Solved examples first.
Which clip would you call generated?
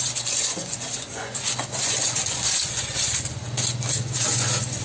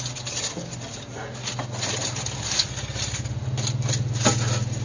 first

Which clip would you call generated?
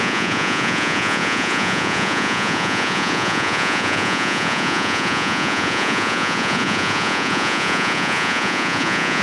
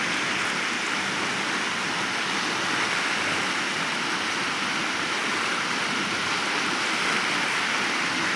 first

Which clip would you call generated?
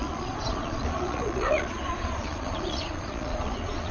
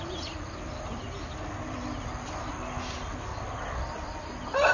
first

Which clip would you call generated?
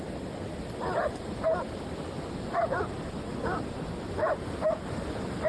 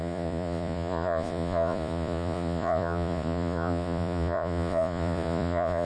second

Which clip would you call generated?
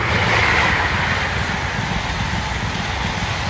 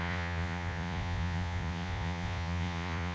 second